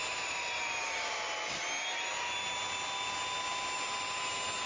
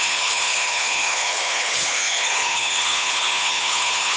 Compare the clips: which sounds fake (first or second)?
second